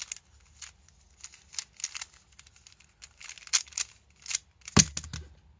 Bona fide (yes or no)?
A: yes